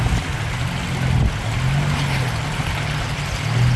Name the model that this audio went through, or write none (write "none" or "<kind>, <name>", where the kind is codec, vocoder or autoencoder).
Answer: none